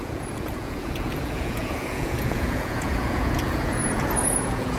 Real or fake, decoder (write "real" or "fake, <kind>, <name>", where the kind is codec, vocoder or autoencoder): fake, vocoder, Vocos